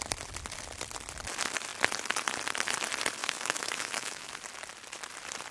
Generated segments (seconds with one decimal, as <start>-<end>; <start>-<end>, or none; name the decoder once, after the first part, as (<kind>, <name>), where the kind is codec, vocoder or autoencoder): 3.2-4.3 (autoencoder, DAC-VAE)